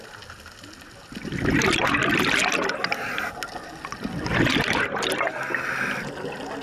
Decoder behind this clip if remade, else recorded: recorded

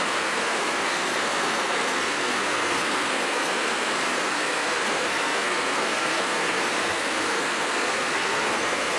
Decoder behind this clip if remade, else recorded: remade, codec, SNAC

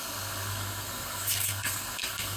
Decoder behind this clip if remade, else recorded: remade, codec, SNAC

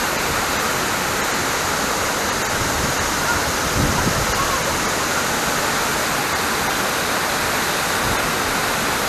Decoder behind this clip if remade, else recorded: recorded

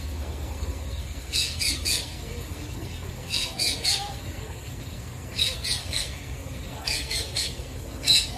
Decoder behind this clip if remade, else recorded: remade, codec, SNAC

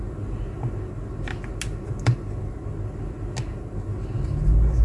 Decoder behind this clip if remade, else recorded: recorded